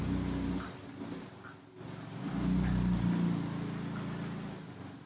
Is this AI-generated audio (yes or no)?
no